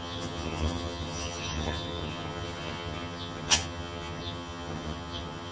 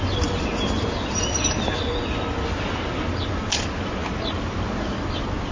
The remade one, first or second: first